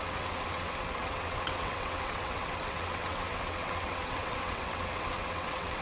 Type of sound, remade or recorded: remade